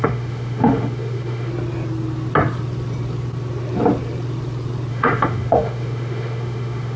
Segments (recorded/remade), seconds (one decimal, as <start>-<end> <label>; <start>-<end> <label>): 0.0-1.5 remade; 1.5-4.9 recorded; 4.9-7.0 remade

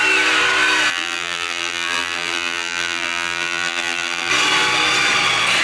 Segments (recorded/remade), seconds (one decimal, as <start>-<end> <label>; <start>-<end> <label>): 0.0-0.9 recorded; 0.9-4.3 remade; 4.3-5.6 recorded

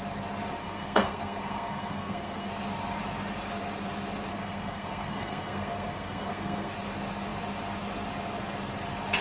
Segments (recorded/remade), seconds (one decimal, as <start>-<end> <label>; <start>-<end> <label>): 0.0-0.6 recorded; 0.6-2.5 remade; 2.5-4.3 recorded; 4.3-6.7 remade; 6.7-9.2 recorded

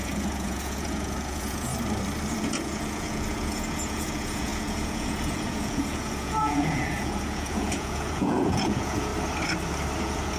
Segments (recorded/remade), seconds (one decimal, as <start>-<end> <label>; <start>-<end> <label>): 0.0-1.7 remade; 1.7-2.3 recorded; 2.3-9.1 remade; 9.1-10.0 recorded; 10.0-10.4 remade

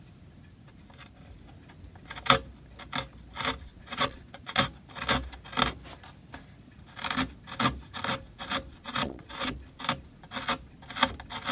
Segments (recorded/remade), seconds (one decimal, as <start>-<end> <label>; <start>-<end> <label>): 0.0-3.7 recorded; 3.7-4.6 remade; 4.6-8.7 recorded; 8.7-9.5 remade; 9.5-11.5 recorded

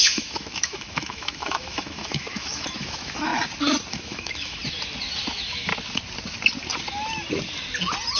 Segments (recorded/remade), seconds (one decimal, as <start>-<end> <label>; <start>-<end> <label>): 0.0-3.3 remade; 3.3-3.9 recorded; 3.9-4.6 remade; 4.6-5.3 recorded; 5.3-5.7 remade; 5.7-8.2 recorded

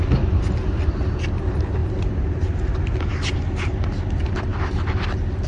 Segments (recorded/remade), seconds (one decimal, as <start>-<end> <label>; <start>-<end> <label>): 0.0-5.5 recorded